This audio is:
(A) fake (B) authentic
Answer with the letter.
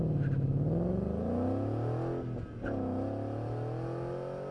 B